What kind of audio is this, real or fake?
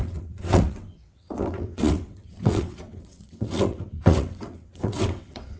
fake